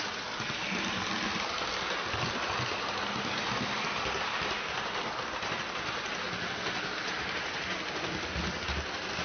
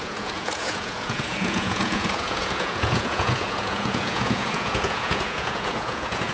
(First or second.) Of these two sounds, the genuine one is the first